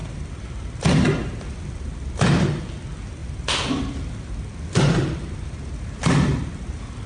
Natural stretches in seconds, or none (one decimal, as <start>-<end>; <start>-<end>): 2.7-3.2; 6.6-7.1